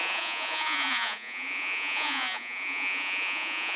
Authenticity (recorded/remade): remade